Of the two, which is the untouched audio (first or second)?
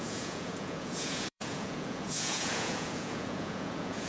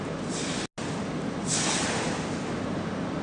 second